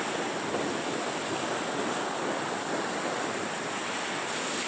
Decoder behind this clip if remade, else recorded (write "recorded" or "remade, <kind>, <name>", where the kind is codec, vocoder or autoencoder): recorded